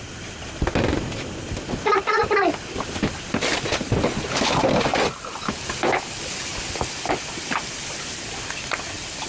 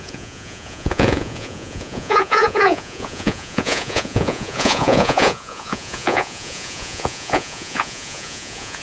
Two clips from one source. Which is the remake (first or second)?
second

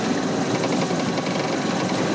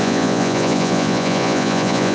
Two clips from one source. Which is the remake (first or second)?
second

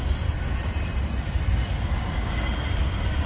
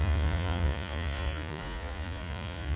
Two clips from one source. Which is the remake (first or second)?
second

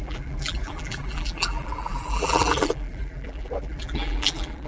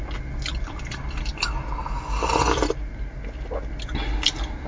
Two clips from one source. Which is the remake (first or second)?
first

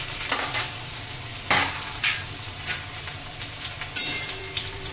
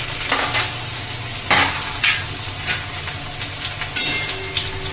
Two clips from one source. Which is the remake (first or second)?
first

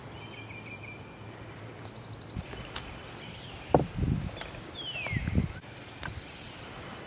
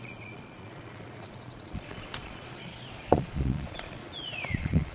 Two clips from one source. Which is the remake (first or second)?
second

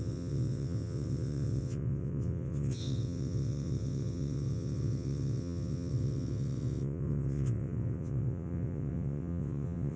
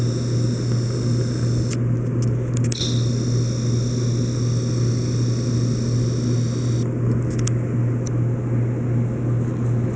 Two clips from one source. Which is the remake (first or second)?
first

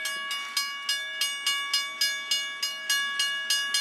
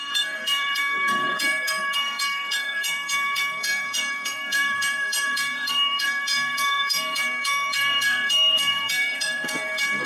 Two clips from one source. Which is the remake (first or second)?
second